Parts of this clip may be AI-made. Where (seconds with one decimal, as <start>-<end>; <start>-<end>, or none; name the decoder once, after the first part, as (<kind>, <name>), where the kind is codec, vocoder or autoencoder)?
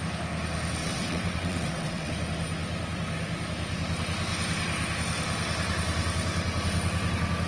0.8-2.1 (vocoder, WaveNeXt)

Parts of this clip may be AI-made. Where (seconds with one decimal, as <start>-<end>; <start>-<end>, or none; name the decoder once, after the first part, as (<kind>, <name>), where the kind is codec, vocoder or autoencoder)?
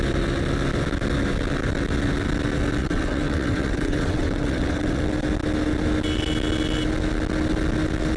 2.8-5.0 (vocoder, WaveNeXt)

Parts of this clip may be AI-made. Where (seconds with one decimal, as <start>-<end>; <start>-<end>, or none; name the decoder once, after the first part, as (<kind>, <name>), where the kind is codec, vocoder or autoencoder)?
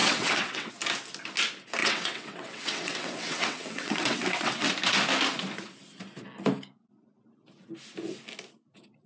0.0-0.7 (vocoder, WaveNeXt); 1.8-4.7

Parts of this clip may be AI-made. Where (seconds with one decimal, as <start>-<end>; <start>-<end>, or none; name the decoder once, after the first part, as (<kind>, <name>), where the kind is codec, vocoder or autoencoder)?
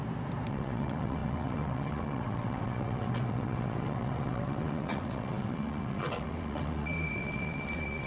0.5-8.1 (vocoder, WaveNeXt)